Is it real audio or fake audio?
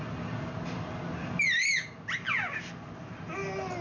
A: real